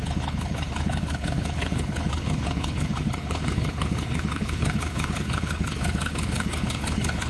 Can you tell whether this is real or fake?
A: fake